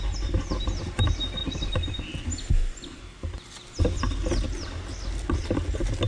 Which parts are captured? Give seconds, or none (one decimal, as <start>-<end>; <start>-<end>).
0.0-6.1